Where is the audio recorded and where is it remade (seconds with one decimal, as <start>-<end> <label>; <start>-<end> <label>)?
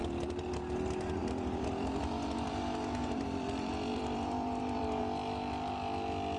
0.0-0.5 remade; 0.5-1.2 recorded; 1.2-5.0 remade; 5.0-6.4 recorded